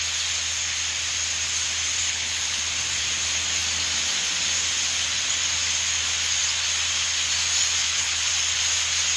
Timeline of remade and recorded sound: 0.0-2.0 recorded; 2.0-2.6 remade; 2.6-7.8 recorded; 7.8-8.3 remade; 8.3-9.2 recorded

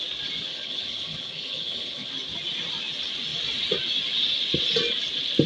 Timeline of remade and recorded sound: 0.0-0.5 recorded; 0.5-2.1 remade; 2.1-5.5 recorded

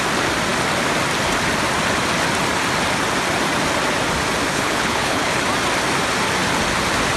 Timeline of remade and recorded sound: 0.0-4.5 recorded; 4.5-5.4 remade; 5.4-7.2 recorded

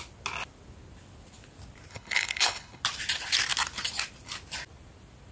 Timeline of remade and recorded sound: 0.0-1.9 recorded; 1.9-2.8 remade; 2.8-5.3 recorded